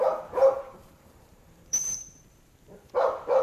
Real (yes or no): no